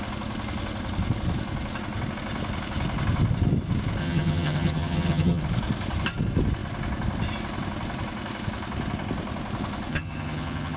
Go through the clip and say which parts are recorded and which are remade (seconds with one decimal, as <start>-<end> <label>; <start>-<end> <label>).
0.0-4.0 recorded; 4.0-5.4 remade; 5.4-9.9 recorded; 9.9-10.8 remade